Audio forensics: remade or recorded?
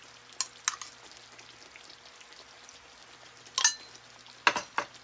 recorded